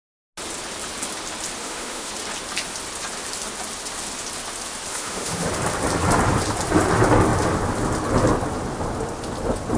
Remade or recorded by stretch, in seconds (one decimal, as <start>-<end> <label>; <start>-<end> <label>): 0.0-1.6 recorded; 1.6-2.1 remade; 2.1-4.9 recorded; 4.9-5.5 remade; 5.5-9.8 recorded